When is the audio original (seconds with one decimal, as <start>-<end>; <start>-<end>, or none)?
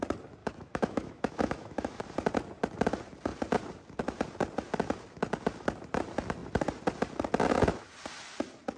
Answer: 0.0-0.4; 2.0-8.8